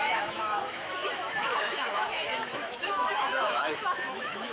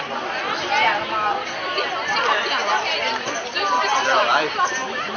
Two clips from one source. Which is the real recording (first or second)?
second